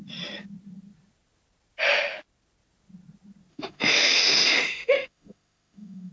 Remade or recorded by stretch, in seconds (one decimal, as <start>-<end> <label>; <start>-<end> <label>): 0.0-3.5 recorded; 3.5-6.1 remade